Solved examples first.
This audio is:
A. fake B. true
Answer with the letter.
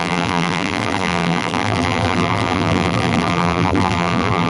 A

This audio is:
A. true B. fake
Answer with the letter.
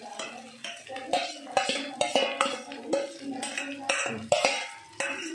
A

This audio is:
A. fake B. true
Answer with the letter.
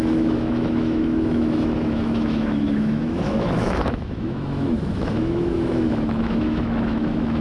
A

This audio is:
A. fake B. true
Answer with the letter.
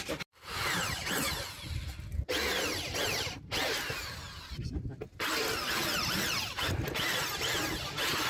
B